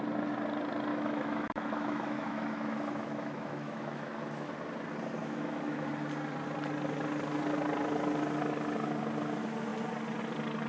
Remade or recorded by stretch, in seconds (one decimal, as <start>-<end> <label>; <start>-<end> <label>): 0.0-0.9 recorded; 0.9-4.5 remade; 4.5-5.2 recorded; 5.2-5.9 remade; 5.9-10.7 recorded